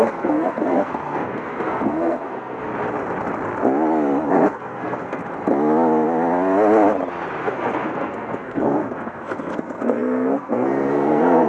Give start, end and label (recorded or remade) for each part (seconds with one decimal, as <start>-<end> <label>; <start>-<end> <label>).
0.0-2.7 remade; 2.7-4.3 recorded; 4.3-5.2 remade; 5.2-7.4 recorded; 7.4-11.5 remade